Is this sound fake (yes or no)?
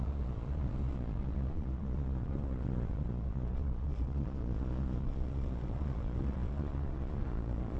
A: yes